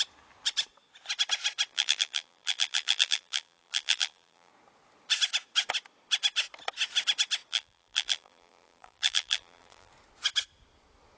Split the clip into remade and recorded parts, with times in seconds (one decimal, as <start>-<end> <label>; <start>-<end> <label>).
0.0-1.7 recorded; 1.7-4.5 remade; 4.5-7.5 recorded; 7.5-9.9 remade; 9.9-11.2 recorded